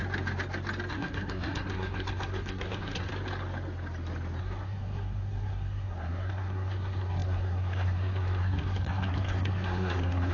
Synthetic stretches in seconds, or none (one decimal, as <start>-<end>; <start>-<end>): 0.9-3.1; 4.4-10.3